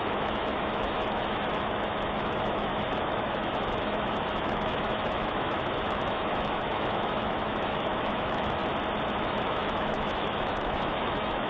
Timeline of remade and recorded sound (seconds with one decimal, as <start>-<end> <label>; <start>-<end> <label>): 0.0-8.6 remade; 8.6-9.1 recorded; 9.1-11.5 remade